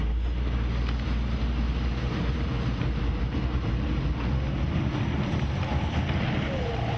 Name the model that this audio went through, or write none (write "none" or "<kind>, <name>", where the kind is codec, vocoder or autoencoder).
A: none